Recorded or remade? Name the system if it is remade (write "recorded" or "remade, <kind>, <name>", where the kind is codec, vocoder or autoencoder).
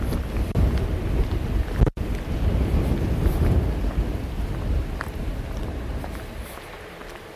recorded